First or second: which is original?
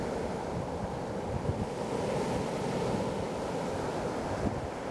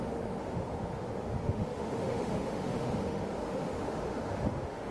first